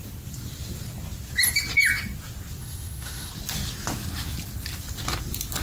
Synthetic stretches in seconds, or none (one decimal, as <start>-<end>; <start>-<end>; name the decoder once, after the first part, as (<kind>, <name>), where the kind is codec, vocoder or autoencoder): 2.6-3.3 (autoencoder, DAC-VAE)